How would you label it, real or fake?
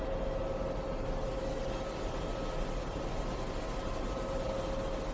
real